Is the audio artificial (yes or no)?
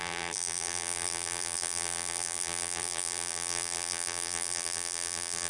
yes